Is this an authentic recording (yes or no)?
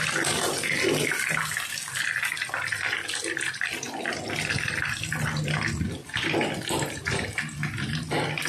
yes